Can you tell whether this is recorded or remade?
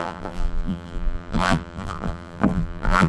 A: remade